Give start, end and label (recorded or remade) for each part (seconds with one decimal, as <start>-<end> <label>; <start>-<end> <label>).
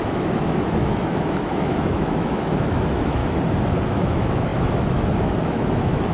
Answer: 0.0-3.2 remade; 3.2-3.9 recorded; 3.9-6.1 remade